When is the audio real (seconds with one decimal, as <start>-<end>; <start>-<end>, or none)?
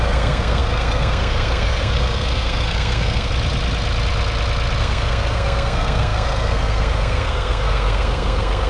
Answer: 3.3-4.8